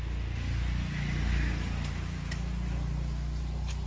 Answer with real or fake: real